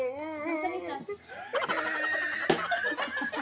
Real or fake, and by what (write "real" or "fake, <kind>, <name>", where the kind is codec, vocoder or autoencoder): real